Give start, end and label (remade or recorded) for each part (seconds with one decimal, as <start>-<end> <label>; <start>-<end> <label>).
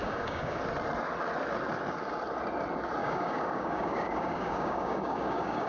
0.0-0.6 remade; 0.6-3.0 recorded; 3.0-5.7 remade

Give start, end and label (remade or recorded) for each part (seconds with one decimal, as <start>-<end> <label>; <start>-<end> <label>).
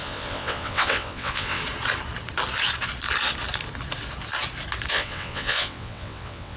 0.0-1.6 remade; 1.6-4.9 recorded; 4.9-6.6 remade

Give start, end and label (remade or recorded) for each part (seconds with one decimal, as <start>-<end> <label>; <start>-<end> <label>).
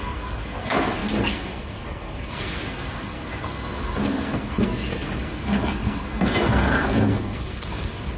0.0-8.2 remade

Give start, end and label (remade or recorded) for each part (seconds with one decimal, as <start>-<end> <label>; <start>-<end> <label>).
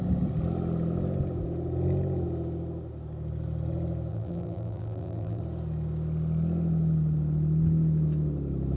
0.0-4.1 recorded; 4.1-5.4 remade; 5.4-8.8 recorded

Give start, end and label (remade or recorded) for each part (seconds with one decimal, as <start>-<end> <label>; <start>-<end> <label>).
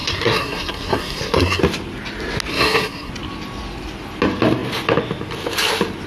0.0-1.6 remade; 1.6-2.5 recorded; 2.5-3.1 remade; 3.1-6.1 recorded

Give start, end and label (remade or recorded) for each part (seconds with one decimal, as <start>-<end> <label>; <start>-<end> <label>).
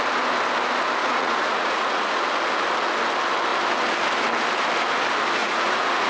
0.0-1.0 recorded; 1.0-2.2 remade; 2.2-5.4 recorded; 5.4-6.1 remade